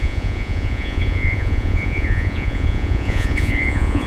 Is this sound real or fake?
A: fake